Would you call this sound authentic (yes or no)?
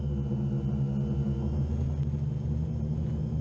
yes